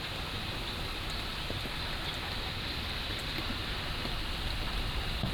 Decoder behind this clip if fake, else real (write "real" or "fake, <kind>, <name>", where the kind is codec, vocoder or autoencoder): real